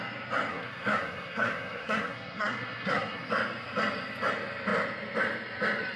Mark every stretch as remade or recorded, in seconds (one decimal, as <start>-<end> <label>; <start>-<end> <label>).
0.0-0.5 recorded; 0.5-3.3 remade; 3.3-6.0 recorded